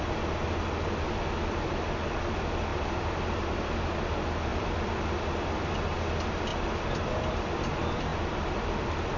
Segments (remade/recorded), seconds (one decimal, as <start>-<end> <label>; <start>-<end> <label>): 0.0-2.7 recorded; 2.7-3.5 remade; 3.5-4.5 recorded; 4.5-5.7 remade; 5.7-6.5 recorded; 6.5-7.3 remade; 7.3-8.1 recorded; 8.1-9.2 remade